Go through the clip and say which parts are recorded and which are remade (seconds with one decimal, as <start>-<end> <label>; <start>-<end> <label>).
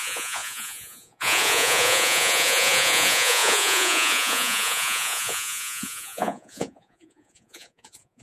0.0-8.2 remade